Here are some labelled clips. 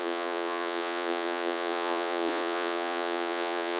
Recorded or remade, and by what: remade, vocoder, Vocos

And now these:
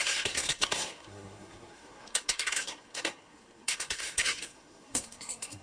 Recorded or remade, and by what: remade, codec, SNAC